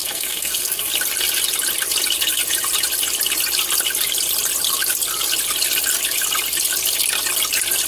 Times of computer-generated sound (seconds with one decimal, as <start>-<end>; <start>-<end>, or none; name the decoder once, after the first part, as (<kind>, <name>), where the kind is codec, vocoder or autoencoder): 0.0-0.9 (codec, SNAC)